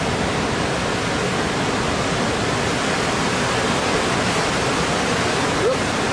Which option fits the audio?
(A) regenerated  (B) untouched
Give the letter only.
B